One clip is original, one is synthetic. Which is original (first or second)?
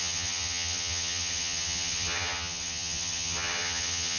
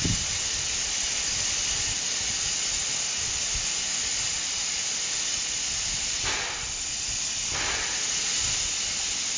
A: second